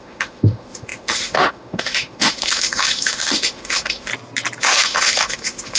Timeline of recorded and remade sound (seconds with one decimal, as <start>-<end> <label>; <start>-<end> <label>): 0.0-4.1 remade; 4.1-4.6 recorded; 4.6-5.8 remade

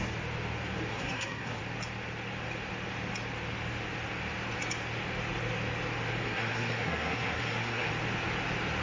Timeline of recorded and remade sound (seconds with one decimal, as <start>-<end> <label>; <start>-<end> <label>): 0.0-0.9 recorded; 0.9-1.6 remade; 1.6-6.2 recorded; 6.2-7.9 remade; 7.9-8.8 recorded

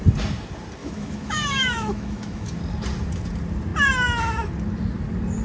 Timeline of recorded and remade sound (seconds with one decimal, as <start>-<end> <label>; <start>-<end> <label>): 0.0-0.8 recorded; 0.8-2.6 remade; 2.6-5.4 recorded

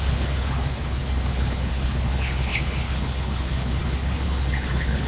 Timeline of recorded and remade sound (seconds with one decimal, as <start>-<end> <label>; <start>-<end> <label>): 0.0-5.1 remade

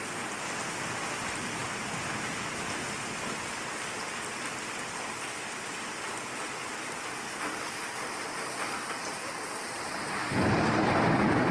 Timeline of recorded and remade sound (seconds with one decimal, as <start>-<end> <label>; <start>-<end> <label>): 0.0-11.5 recorded

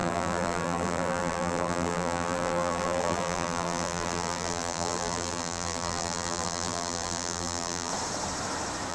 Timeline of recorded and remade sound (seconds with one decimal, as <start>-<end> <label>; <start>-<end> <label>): 0.0-7.9 remade; 7.9-8.9 recorded

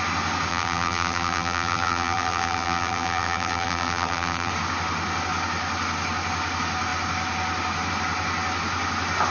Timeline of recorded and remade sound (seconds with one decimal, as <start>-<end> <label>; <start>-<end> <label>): 0.0-0.5 recorded; 0.5-4.5 remade; 4.5-9.3 recorded

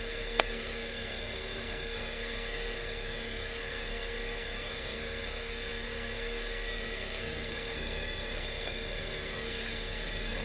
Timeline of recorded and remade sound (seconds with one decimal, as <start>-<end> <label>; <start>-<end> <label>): 0.0-10.4 remade